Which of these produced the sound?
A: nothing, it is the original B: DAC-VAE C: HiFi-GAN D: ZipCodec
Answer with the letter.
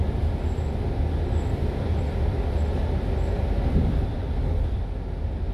A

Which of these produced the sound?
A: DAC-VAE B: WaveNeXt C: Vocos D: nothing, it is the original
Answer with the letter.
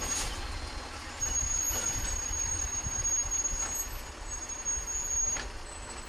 D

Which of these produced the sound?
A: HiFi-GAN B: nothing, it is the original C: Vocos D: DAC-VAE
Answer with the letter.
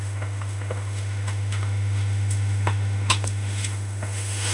D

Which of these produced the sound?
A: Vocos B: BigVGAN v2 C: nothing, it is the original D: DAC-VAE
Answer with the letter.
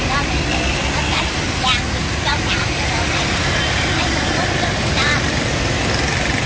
C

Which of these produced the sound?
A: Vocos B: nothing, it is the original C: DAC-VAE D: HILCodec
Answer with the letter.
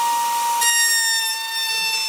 B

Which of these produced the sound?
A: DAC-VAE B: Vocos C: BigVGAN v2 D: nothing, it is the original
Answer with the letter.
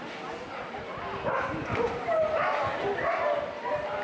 D